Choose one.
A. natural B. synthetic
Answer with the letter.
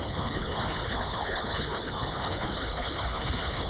B